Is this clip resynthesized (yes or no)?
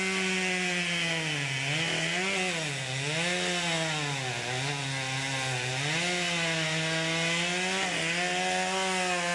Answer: no